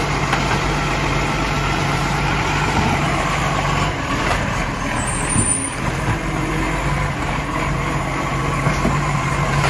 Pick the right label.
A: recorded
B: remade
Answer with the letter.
B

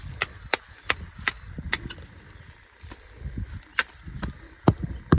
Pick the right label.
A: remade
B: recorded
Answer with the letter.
B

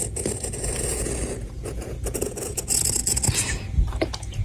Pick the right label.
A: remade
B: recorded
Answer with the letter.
A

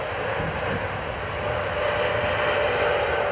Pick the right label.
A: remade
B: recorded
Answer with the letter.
B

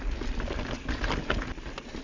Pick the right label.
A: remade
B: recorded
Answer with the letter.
B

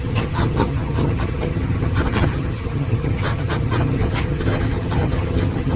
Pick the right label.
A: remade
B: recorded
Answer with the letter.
A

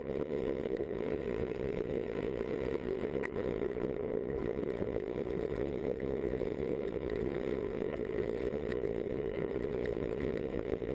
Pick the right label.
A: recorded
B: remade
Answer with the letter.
B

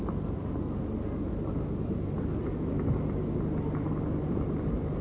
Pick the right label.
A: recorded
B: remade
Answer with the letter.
A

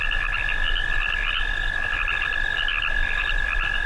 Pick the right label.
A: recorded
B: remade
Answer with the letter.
A